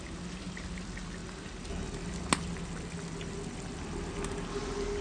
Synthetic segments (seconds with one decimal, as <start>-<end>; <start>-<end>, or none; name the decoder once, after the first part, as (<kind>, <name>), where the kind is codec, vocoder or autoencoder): none